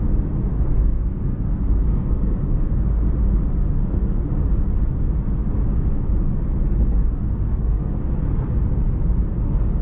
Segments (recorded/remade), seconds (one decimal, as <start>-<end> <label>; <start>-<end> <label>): 0.0-0.5 recorded; 0.5-2.7 remade; 2.7-3.7 recorded; 3.7-4.2 remade; 4.2-7.2 recorded; 7.2-8.0 remade; 8.0-9.8 recorded